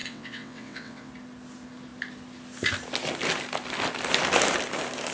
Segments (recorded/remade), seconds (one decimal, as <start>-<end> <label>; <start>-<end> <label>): 0.0-1.1 remade; 1.1-5.1 recorded